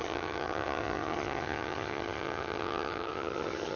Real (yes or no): no